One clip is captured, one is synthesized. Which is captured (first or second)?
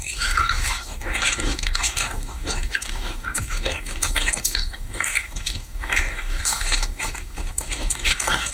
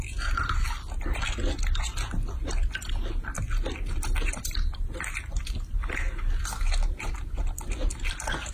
second